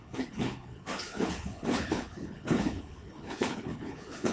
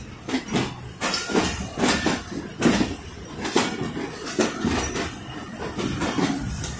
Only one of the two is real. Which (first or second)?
second